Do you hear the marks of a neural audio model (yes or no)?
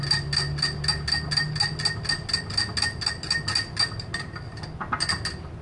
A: no